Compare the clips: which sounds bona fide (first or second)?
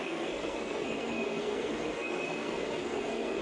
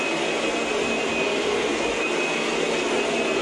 second